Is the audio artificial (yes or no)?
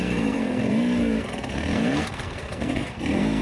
yes